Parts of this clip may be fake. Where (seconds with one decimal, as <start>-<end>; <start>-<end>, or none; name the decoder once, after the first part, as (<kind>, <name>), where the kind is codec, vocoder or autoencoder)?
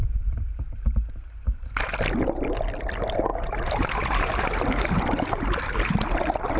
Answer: 0.0-1.1 (vocoder, BigVGAN v2); 3.3-5.6